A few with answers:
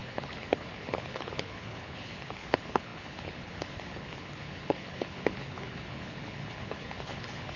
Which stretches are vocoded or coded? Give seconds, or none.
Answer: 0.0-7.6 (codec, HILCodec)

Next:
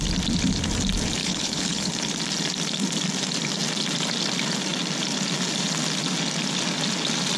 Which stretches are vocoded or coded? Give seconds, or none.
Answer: 1.2-1.9 (codec, HILCodec)

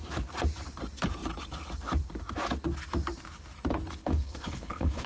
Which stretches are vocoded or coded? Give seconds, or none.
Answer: 4.0-5.1 (codec, HILCodec)

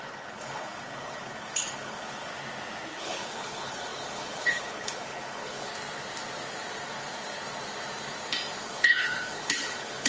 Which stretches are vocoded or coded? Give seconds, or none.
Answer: 0.0-2.3 (codec, HILCodec); 3.0-5.7; 8.6-10.1

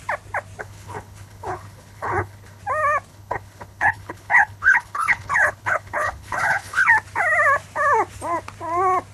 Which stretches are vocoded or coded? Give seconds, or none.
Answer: 0.6-2.6 (codec, HILCodec); 3.1-6.9

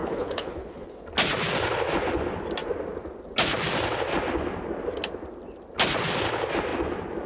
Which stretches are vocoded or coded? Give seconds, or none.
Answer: 0.0-1.0 (codec, HILCodec)

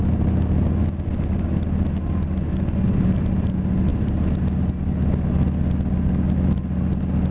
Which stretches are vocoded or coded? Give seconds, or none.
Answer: none